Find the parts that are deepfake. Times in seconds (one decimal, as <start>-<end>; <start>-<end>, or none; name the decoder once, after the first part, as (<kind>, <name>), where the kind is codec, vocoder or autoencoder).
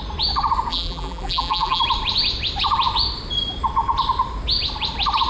0.7-1.8 (vocoder, BigVGAN v2)